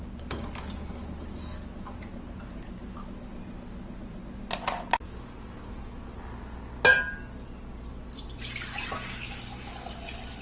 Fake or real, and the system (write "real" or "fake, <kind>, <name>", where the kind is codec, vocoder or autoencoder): real